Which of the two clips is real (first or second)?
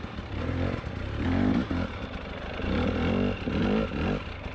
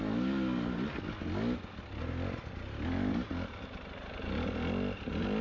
second